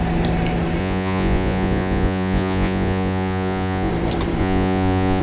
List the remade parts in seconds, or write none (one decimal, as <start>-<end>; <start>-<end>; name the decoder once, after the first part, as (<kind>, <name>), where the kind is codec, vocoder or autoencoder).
0.8-3.9 (vocoder, Vocos); 4.4-5.2